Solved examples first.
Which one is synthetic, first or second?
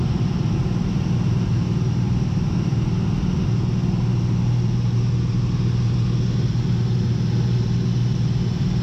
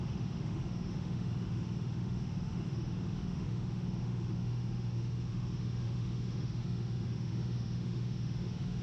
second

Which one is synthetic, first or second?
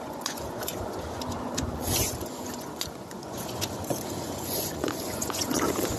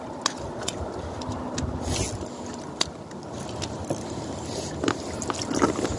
first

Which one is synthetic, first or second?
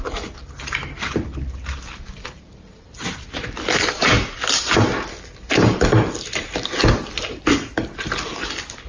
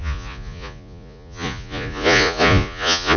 second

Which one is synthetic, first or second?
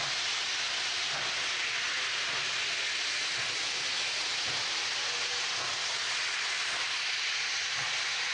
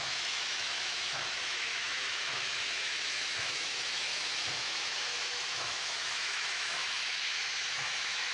second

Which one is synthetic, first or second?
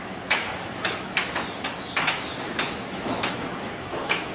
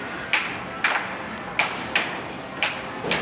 first